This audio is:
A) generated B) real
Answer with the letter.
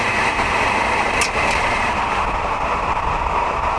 A